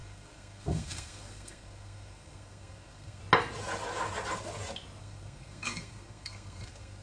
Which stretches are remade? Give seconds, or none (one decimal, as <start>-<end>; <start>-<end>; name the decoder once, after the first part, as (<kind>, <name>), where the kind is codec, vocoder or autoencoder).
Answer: 0.0-3.2 (codec, SNAC); 5.0-7.0